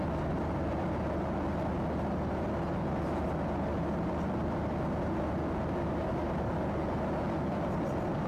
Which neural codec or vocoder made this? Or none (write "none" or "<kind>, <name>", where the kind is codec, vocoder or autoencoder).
none